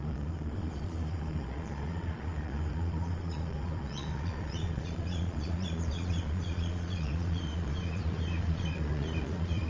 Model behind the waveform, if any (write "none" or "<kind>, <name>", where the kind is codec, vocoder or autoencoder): vocoder, Vocos